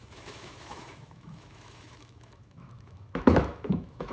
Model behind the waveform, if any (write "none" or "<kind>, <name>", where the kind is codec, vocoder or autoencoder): autoencoder, DAC-VAE